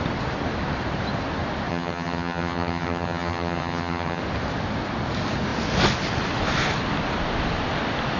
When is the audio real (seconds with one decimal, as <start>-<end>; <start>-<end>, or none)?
0.0-1.7; 4.2-8.2